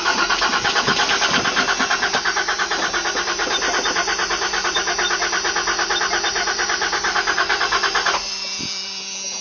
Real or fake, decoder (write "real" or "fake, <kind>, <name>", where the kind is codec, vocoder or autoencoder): fake, vocoder, BigVGAN v2